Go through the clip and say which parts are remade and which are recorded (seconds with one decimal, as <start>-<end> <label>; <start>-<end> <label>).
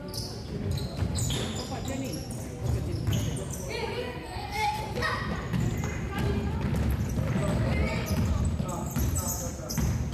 0.0-4.0 recorded; 4.0-4.8 remade; 4.8-10.1 recorded